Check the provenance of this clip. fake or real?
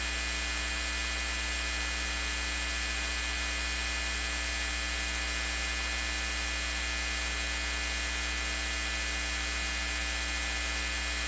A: real